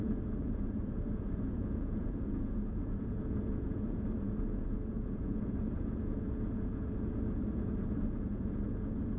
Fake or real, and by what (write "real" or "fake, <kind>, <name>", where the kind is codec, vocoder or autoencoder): fake, vocoder, Vocos